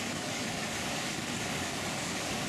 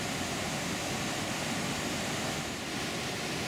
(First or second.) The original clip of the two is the second